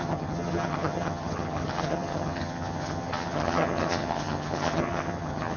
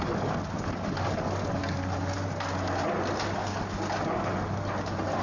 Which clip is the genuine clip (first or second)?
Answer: second